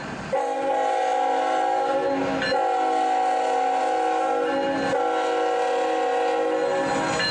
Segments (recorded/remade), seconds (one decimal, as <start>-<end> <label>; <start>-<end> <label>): 0.0-7.3 recorded

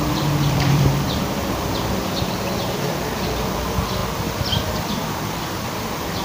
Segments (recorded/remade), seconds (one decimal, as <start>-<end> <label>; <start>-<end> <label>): 0.0-6.2 remade

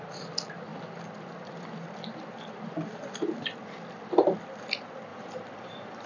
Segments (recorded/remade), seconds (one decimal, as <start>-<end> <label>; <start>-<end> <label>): 0.0-5.1 recorded; 5.1-6.1 remade